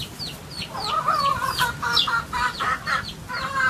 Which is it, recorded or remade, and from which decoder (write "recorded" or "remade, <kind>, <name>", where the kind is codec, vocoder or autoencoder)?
recorded